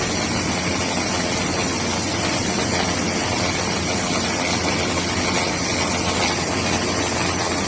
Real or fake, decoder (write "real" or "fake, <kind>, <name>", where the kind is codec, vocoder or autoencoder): real